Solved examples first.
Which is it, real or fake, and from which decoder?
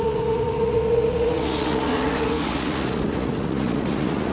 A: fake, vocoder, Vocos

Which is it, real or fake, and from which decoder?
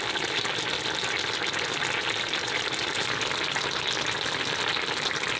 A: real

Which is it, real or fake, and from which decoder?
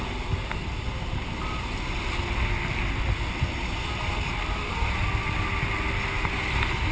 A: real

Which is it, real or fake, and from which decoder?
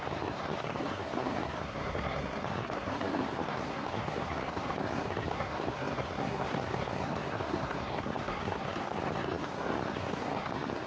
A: fake, codec, SNAC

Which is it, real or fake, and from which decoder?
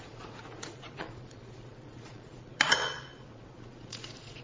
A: fake, vocoder, Vocos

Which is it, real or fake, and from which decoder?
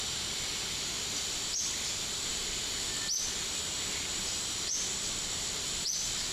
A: real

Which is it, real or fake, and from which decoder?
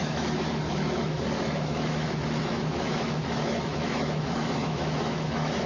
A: fake, autoencoder, DAC-VAE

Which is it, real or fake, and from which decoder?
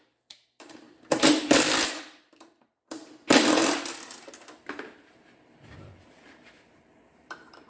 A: fake, vocoder, BigVGAN v2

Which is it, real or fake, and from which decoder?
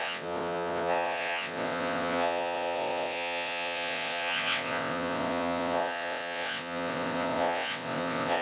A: fake, vocoder, WaveNeXt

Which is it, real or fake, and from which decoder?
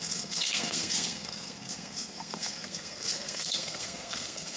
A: fake, codec, SNAC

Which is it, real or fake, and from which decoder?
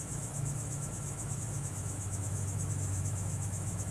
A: fake, autoencoder, DAC-VAE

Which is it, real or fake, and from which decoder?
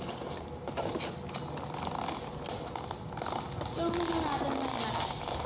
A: real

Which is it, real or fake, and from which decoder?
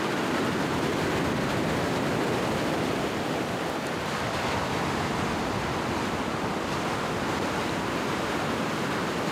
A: real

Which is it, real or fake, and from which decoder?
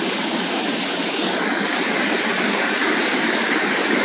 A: fake, codec, DAC